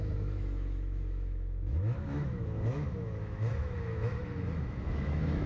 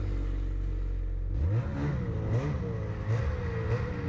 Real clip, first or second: second